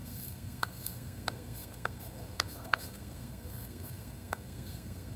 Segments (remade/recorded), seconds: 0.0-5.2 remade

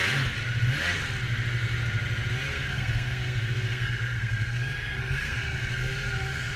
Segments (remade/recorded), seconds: 0.0-2.5 recorded; 2.5-6.6 remade

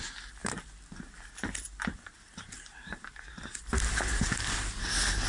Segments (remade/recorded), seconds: 0.0-5.3 recorded

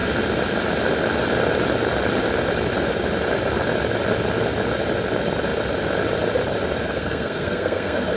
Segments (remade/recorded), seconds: 0.0-6.9 recorded; 6.9-8.2 remade

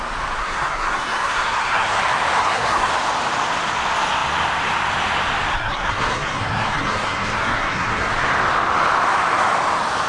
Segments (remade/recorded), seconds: 0.0-0.4 recorded; 0.4-2.0 remade; 2.0-2.4 recorded; 2.4-2.9 remade; 2.9-5.5 recorded; 5.5-8.1 remade; 8.1-10.1 recorded

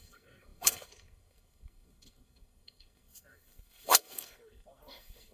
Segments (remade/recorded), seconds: 0.0-5.3 remade

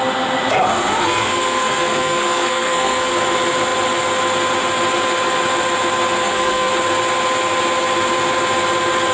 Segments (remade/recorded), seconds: 0.0-1.0 recorded; 1.0-3.1 remade; 3.1-6.2 recorded; 6.2-6.7 remade; 6.7-9.1 recorded

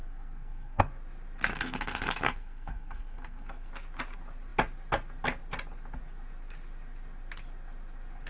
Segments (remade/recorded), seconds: 0.0-0.8 remade; 0.8-1.5 recorded; 1.5-3.7 remade; 3.7-8.3 recorded